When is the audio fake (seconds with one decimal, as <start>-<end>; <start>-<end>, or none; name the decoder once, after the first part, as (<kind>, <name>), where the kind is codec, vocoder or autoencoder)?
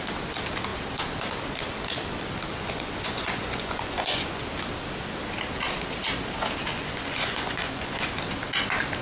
2.5-4.4 (vocoder, Vocos); 6.7-8.0